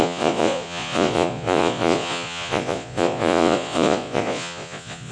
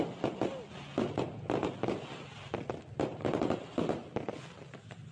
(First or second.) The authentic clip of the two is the second